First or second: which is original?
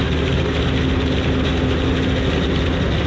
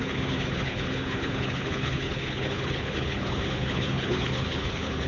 first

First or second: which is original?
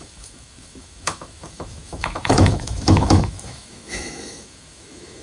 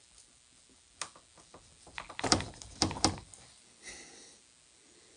second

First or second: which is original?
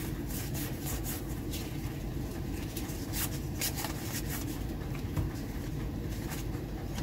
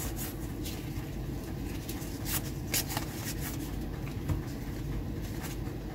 second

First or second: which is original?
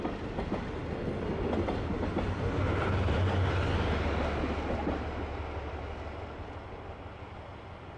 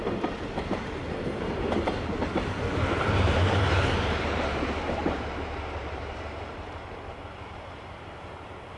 first